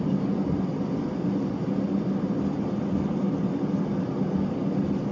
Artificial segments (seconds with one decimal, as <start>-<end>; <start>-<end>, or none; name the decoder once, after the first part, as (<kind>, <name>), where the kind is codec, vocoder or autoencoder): none